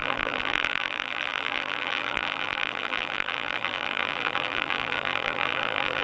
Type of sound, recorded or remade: remade